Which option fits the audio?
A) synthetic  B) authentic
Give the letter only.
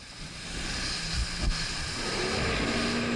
B